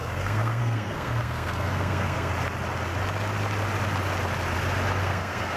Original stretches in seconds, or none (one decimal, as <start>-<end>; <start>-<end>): 2.3-5.0